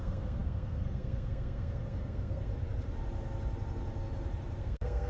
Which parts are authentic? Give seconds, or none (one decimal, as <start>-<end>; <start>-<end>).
2.5-4.6